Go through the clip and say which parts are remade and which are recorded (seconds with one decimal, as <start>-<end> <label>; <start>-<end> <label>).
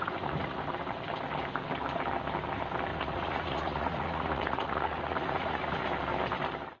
0.0-0.6 remade; 0.6-2.9 recorded; 2.9-5.8 remade; 5.8-6.8 recorded